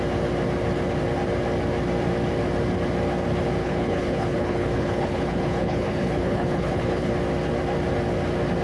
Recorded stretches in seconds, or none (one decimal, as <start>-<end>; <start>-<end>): 0.0-3.6; 7.1-8.6